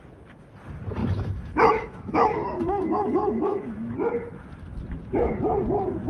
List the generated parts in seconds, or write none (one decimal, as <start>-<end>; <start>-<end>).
1.0-3.9